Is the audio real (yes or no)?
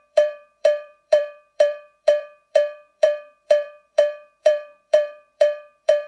no